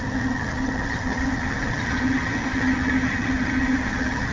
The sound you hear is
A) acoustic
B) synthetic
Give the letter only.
B